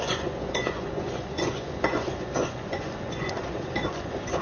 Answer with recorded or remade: remade